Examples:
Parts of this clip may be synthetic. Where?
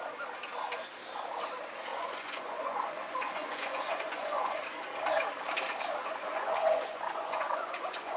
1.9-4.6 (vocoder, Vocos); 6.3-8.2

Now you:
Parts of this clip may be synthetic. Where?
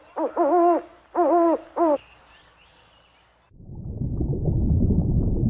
0.9-3.9 (vocoder, BigVGAN v2)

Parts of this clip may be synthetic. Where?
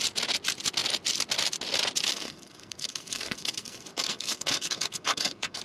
2.1-5.6 (codec, SNAC)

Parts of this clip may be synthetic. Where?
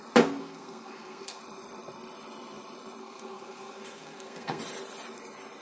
0.4-1.4 (codec, SNAC); 3.0-4.6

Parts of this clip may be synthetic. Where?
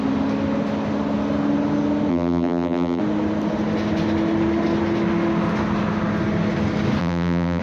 2.1-3.0 (vocoder, BigVGAN v2); 7.0-7.6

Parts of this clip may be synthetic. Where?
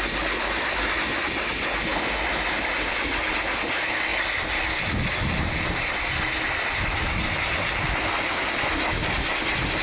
none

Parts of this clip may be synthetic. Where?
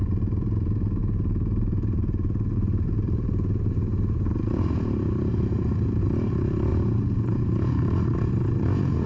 1.0-6.0 (vocoder, BigVGAN v2); 6.7-7.5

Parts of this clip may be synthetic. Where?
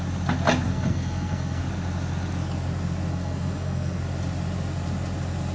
0.7-1.6 (codec, SNAC); 3.1-4.0